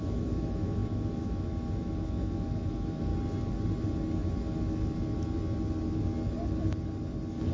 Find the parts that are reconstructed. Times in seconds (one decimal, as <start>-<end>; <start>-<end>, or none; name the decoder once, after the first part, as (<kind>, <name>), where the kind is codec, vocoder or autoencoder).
0.0-3.1 (autoencoder, DAC-VAE)